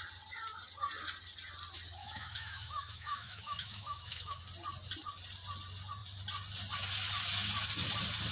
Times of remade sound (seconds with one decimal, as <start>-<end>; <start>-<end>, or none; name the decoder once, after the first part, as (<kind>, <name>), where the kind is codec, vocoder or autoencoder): 2.0-4.4 (autoencoder, DAC-VAE)